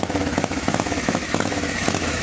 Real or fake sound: fake